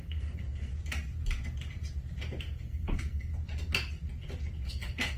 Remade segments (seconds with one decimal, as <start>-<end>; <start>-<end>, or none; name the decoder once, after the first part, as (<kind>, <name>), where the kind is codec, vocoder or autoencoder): 0.0-0.7 (codec, SNAC); 2.4-3.3; 4.7-5.2